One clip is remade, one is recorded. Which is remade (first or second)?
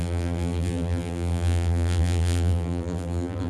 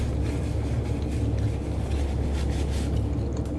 first